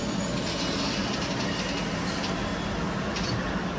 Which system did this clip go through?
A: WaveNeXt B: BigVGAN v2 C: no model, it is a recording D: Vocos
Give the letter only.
C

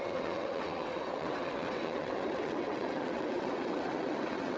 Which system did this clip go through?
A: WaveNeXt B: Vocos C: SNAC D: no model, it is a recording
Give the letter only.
A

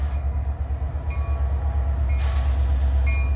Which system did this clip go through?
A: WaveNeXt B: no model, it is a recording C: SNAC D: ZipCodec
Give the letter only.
B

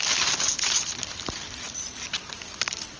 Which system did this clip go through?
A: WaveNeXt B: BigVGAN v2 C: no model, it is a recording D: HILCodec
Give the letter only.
C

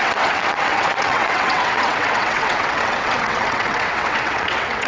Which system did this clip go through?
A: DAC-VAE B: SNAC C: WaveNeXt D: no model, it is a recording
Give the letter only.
C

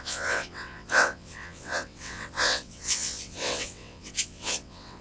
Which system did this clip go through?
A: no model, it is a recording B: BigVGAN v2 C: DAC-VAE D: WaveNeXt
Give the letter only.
D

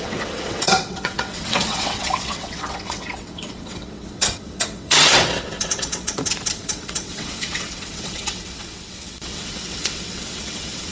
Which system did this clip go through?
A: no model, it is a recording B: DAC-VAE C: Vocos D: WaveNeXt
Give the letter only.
D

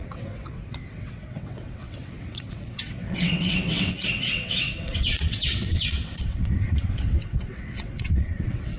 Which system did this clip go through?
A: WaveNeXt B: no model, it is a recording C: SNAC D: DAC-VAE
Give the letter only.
A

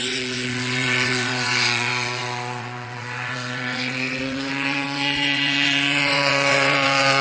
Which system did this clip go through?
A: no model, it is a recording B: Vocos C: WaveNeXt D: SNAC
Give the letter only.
C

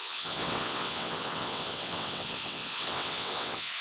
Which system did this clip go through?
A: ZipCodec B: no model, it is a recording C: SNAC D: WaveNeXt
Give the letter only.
D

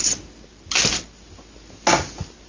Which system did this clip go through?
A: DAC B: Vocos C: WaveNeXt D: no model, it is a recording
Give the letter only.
D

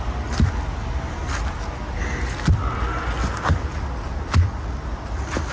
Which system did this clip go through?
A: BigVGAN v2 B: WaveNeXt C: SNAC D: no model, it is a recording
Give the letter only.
D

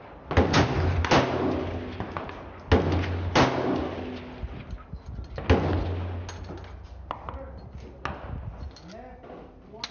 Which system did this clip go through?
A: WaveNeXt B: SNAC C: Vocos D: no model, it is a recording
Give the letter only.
D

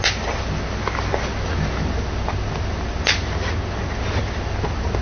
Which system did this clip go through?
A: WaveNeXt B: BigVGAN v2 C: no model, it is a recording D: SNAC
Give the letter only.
C